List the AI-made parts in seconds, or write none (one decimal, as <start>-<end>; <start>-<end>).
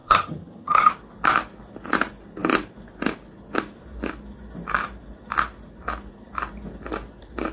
0.0-0.9